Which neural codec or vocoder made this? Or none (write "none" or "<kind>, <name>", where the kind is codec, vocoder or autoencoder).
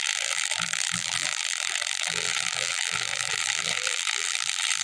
vocoder, BigVGAN v2